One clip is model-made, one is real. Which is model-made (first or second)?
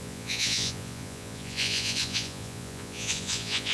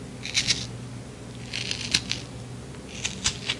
first